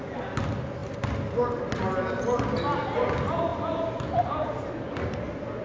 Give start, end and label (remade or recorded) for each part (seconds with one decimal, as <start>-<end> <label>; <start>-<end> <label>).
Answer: 0.0-5.6 recorded